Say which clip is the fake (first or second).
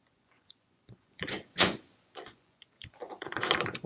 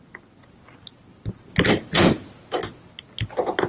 first